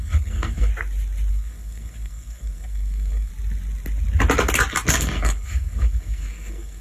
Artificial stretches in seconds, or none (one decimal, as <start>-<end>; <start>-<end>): 0.0-0.7; 1.3-3.3; 4.9-6.8